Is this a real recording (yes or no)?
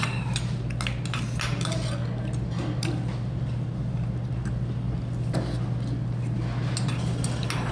yes